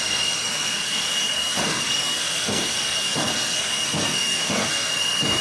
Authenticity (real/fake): fake